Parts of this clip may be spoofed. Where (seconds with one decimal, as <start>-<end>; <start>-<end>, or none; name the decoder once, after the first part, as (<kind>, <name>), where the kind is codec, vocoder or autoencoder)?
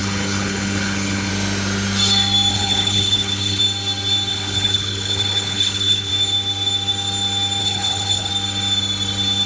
0.0-1.3 (codec, HILCodec); 2.5-3.6; 4.3-6.1; 7.6-8.3